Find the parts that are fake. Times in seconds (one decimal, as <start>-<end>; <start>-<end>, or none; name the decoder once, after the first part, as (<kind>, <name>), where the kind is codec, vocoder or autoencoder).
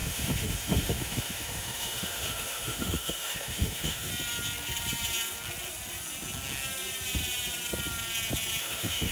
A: 0.0-4.1 (autoencoder, DAC-VAE); 8.6-9.1